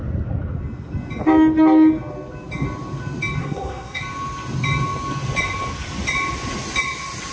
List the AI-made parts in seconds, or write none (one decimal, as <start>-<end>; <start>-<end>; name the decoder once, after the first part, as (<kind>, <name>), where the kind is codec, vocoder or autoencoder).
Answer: 3.4-4.0 (codec, SNAC)